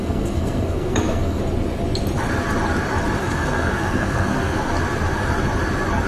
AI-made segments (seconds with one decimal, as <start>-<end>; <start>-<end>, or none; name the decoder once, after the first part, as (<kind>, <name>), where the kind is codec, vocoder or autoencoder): 0.0-1.4 (codec, SNAC); 3.2-4.7